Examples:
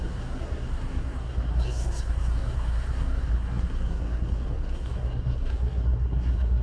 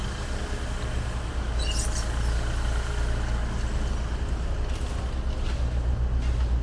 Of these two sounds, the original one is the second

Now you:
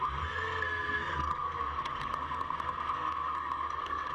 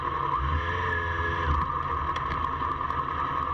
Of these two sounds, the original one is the second